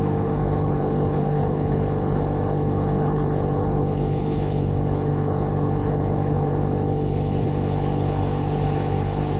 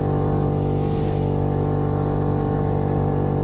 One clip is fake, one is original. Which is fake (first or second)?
first